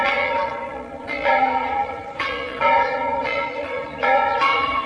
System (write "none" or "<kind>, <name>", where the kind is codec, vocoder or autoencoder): vocoder, Vocos